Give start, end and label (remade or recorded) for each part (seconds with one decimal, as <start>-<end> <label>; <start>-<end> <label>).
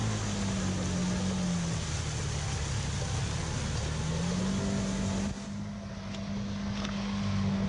0.0-7.7 recorded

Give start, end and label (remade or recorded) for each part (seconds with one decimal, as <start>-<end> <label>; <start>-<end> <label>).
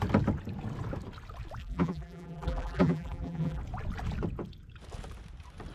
0.0-1.6 recorded; 1.6-3.6 remade; 3.6-5.7 recorded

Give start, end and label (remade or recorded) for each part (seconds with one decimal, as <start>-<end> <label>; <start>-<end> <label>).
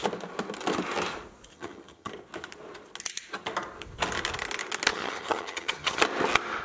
0.0-1.5 recorded; 1.5-2.1 remade; 2.1-4.9 recorded; 4.9-6.0 remade; 6.0-6.6 recorded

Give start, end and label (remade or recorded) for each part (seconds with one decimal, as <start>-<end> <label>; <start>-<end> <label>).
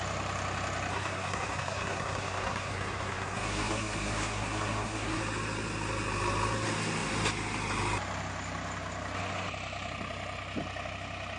0.0-0.9 recorded; 0.9-5.2 remade; 5.2-11.4 recorded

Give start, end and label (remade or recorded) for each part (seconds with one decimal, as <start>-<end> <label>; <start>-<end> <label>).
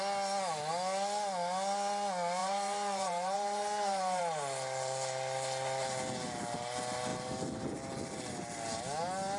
0.0-2.4 recorded; 2.4-4.2 remade; 4.2-9.4 recorded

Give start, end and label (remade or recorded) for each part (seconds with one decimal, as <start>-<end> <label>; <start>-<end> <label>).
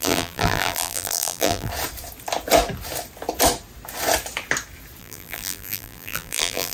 0.0-1.7 remade; 1.7-5.0 recorded; 5.0-6.7 remade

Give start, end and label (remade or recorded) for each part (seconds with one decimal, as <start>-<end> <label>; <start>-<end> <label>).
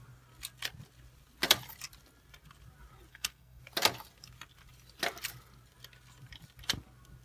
0.0-3.1 recorded; 3.1-3.6 remade; 3.6-7.2 recorded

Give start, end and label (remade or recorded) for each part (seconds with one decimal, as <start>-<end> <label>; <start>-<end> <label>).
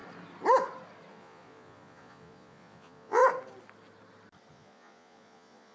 0.0-1.1 recorded; 1.1-3.2 remade; 3.2-4.5 recorded; 4.5-5.7 remade